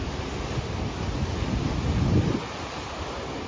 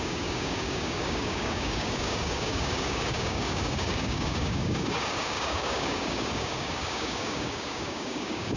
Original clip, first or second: first